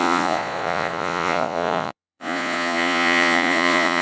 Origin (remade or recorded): remade